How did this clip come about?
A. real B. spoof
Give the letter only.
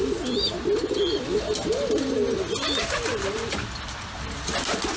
A